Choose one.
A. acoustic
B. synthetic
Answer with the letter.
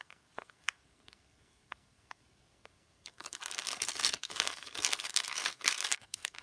B